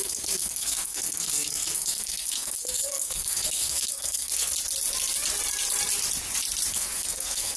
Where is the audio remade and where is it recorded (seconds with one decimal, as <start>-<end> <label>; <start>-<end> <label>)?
0.0-4.5 remade; 4.5-6.7 recorded; 6.7-7.6 remade